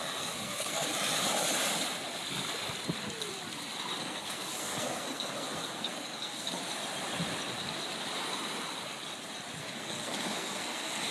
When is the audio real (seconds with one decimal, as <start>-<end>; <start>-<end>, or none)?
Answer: 0.9-4.0; 6.6-9.6